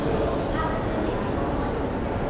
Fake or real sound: real